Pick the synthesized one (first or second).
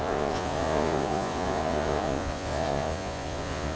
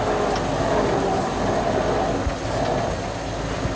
first